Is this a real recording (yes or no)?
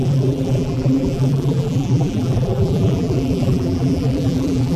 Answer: no